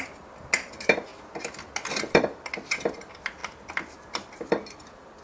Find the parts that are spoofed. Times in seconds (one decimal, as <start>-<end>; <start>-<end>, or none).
0.0-1.1; 2.0-3.4; 4.1-5.2